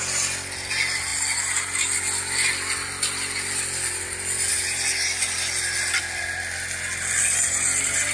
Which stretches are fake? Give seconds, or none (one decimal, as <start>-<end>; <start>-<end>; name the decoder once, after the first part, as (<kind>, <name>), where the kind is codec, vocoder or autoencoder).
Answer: none